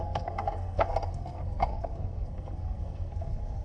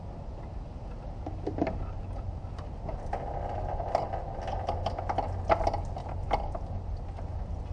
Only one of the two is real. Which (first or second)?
second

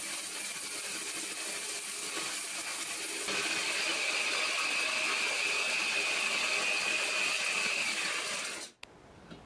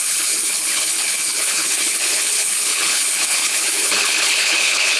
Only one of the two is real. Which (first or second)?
first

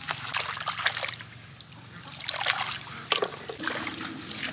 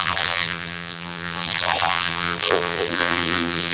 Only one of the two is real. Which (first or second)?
first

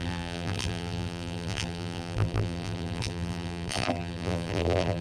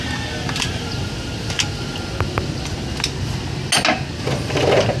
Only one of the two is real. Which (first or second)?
second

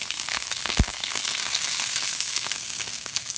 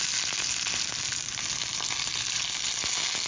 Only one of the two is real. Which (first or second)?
second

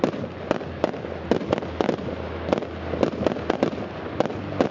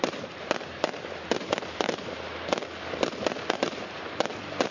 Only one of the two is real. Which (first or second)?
first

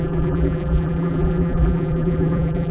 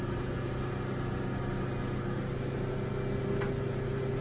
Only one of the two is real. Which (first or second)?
second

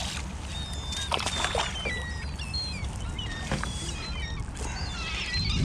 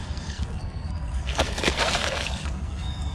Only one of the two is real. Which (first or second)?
first